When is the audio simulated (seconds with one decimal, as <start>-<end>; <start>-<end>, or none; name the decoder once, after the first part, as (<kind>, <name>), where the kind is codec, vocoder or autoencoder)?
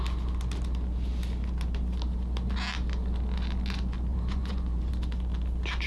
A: 4.1-4.9 (vocoder, Vocos)